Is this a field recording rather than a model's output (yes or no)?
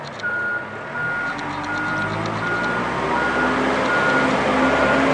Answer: yes